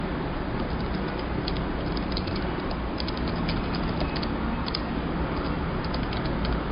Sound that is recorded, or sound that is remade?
recorded